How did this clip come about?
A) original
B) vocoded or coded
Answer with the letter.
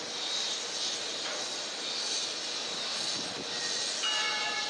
A